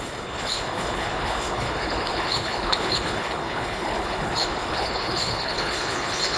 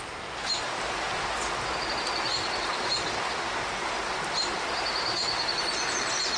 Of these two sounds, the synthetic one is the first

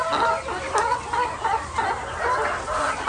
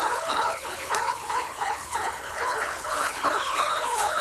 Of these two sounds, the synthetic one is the second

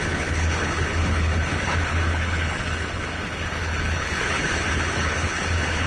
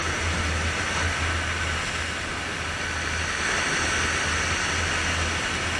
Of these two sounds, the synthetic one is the first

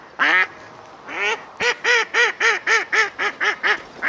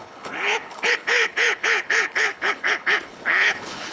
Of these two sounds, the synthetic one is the second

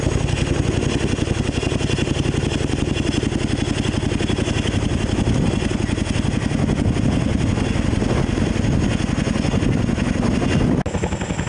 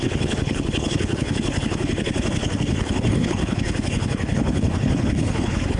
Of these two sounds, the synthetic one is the second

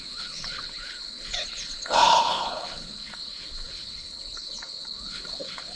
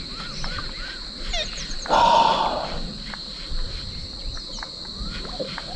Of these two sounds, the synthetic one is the first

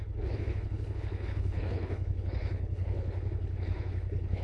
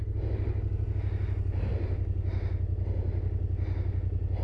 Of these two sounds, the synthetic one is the first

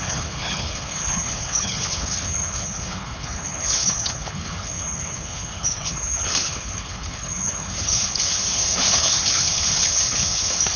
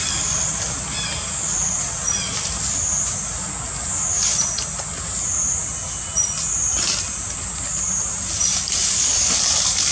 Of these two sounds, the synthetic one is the first